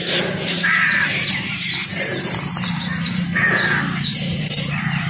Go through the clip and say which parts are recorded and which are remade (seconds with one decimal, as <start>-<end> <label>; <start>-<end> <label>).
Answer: 0.0-5.1 remade